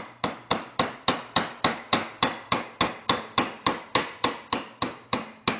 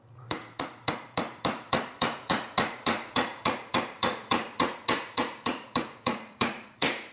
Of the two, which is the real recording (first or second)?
first